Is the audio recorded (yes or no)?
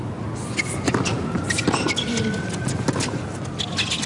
yes